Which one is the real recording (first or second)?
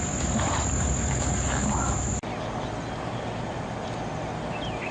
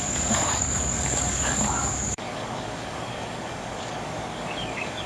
first